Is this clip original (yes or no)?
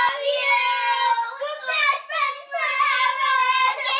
yes